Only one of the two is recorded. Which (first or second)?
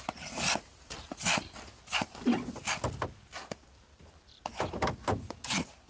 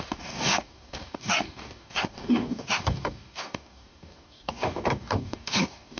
first